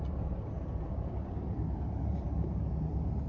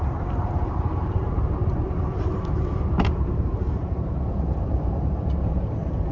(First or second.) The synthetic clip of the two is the second